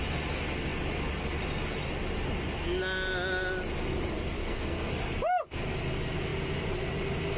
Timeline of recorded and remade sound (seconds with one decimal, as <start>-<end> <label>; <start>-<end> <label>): 0.0-4.4 recorded; 4.4-4.9 remade; 4.9-7.4 recorded

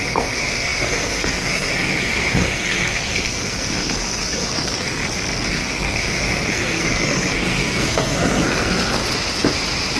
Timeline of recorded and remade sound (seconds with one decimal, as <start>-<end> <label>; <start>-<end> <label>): 0.0-5.0 remade; 5.0-5.5 recorded; 5.5-9.0 remade; 9.0-10.0 recorded

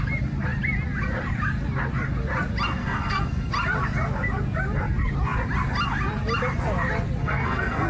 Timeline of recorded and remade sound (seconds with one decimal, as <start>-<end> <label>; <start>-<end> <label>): 0.0-2.8 recorded; 2.8-3.5 remade; 3.5-7.2 recorded; 7.2-7.9 remade

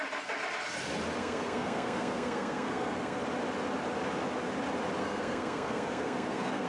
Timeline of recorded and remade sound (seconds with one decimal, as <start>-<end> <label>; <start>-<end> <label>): 0.0-1.2 recorded; 1.2-3.2 remade; 3.2-5.0 recorded; 5.0-6.7 remade

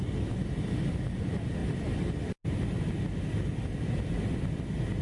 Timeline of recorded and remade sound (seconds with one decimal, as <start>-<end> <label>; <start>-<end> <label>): 0.0-5.0 recorded

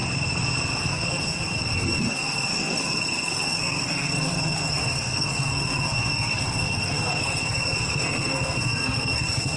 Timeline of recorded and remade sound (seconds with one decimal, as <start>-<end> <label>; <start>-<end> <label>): 0.0-0.9 recorded; 0.9-9.6 remade